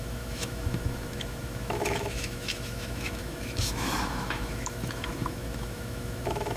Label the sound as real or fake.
fake